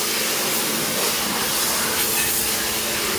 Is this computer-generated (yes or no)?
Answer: no